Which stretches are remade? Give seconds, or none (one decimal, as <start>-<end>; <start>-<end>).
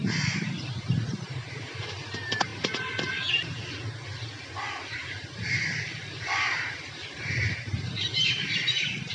0.0-2.5; 4.9-9.1